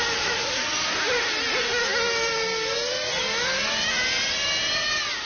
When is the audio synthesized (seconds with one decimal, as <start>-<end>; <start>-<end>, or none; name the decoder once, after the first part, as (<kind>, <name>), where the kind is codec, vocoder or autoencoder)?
none